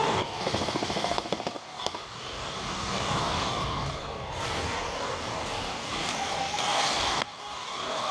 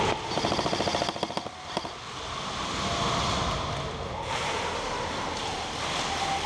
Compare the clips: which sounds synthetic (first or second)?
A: first